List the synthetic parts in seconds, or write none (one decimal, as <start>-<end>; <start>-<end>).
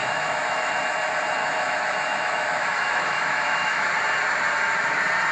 0.0-0.7; 1.4-3.9